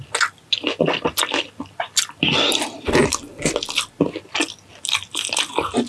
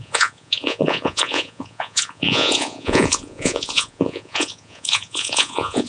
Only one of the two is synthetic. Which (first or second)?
second